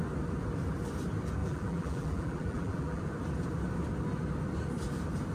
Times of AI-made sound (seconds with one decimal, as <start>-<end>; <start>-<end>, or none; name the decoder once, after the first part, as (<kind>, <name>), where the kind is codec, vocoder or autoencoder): 1.4-3.0 (vocoder, BigVGAN v2)

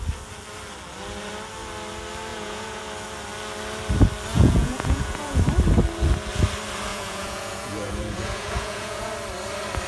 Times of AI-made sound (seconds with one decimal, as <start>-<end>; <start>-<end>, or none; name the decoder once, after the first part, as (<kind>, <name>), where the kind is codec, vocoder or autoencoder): 2.3-2.8 (vocoder, Vocos); 4.3-5.4; 6.9-9.1

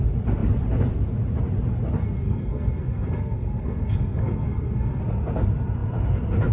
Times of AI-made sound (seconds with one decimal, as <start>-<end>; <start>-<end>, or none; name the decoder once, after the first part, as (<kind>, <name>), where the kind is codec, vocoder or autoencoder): 2.0-5.0 (codec, SNAC)